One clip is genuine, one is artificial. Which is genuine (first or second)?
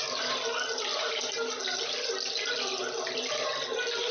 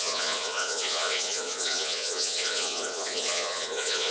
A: first